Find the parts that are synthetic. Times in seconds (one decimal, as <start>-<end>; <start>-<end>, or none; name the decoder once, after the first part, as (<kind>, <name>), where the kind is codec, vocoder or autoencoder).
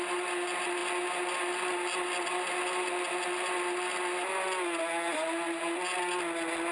none